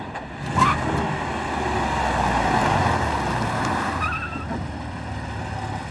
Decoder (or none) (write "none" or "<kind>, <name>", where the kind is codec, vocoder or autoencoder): none